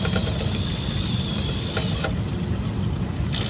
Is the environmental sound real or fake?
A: real